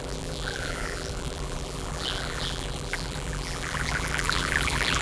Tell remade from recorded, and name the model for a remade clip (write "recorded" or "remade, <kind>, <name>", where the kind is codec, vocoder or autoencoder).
remade, vocoder, BigVGAN v2